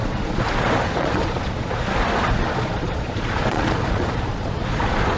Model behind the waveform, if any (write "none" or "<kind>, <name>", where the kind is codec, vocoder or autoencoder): vocoder, Vocos